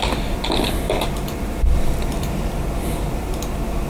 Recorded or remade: remade